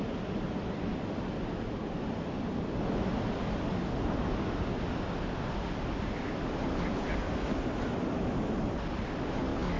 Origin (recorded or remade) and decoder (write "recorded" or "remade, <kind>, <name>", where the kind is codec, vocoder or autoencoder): recorded